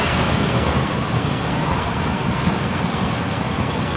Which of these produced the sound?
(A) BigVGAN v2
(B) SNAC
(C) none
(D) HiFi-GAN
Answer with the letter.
B